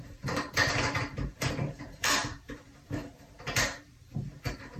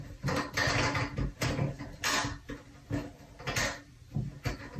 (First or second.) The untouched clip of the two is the second